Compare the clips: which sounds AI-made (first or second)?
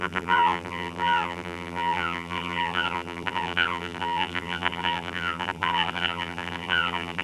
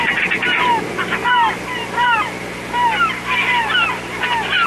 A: first